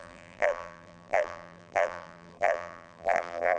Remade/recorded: remade